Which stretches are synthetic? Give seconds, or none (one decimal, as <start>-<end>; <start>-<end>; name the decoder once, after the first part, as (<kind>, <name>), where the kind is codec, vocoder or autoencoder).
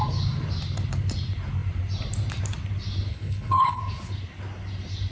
3.1-3.8 (codec, HILCodec)